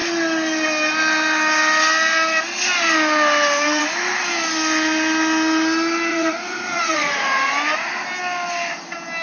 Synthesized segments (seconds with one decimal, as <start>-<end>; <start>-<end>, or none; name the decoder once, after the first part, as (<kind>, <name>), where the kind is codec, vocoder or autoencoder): 6.1-7.5 (vocoder, Vocos)